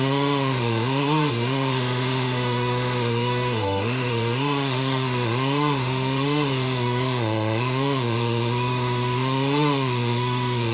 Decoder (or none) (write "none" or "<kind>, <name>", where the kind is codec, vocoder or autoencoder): autoencoder, DAC-VAE